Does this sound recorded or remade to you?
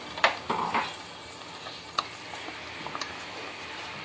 recorded